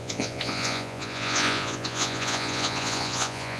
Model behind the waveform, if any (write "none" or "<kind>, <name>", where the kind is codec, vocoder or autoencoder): vocoder, Vocos